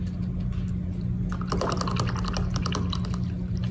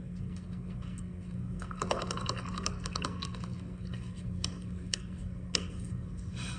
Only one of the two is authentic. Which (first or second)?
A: first